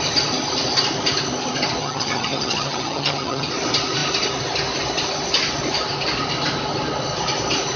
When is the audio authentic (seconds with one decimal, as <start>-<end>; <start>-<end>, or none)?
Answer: 0.0-1.8; 3.5-7.8